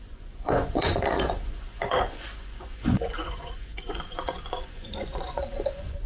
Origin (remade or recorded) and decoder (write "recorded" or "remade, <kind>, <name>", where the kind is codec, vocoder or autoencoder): remade, vocoder, Vocos